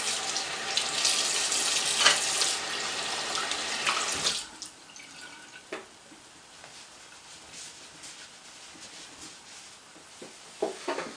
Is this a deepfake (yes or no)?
no